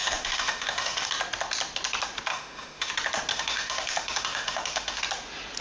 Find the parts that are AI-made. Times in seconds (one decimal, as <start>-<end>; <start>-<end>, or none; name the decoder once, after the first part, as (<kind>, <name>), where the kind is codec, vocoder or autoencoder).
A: 0.0-1.1 (autoencoder, DAC-VAE); 2.3-2.9; 3.3-5.0